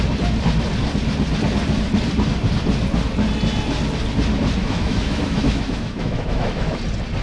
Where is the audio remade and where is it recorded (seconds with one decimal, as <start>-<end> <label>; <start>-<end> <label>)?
0.0-4.6 recorded; 4.6-6.8 remade; 6.8-7.2 recorded